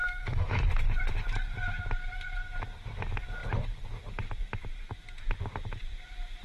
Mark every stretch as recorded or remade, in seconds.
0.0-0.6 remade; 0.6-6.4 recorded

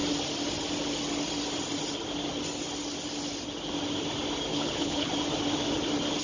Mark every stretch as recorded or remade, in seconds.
0.0-4.5 recorded; 4.5-5.1 remade; 5.1-6.2 recorded

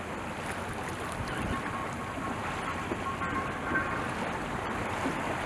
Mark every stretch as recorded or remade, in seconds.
0.0-1.8 remade; 1.8-4.4 recorded; 4.4-5.5 remade

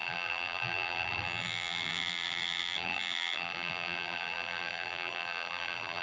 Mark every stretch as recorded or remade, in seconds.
0.0-6.0 remade

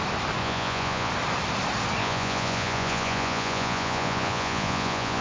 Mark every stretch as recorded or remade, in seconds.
0.0-0.4 recorded; 0.4-1.1 remade; 1.1-2.0 recorded; 2.0-5.2 remade

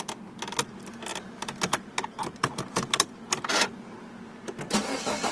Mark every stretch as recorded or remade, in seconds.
0.0-5.3 recorded